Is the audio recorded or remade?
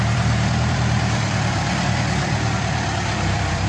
remade